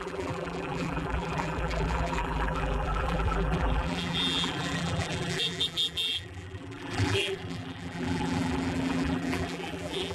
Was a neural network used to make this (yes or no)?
yes